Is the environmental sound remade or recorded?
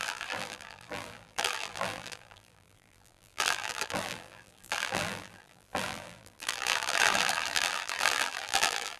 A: remade